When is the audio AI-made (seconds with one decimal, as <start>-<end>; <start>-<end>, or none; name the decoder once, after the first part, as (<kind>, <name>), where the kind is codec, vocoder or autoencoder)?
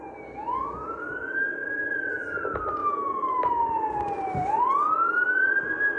2.8-3.5 (autoencoder, DAC-VAE)